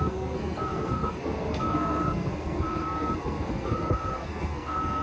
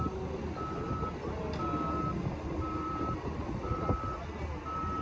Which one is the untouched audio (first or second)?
second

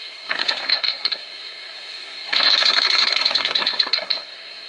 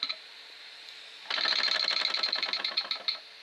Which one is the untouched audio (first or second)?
second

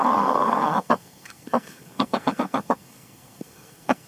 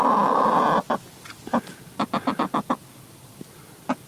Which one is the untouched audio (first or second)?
second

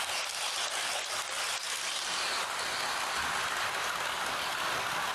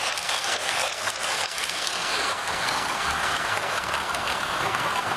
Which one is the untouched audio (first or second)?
first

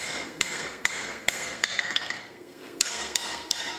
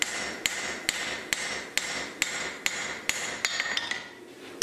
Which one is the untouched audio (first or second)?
second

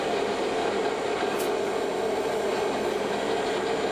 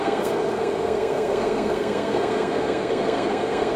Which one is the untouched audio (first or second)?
first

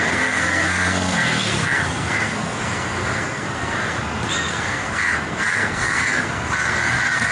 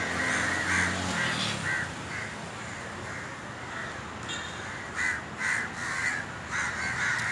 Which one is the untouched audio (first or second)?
second